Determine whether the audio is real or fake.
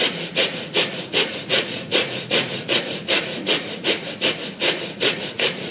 fake